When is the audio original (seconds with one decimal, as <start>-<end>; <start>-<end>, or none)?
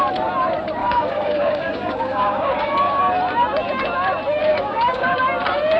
0.0-0.8; 3.0-4.5; 5.2-5.8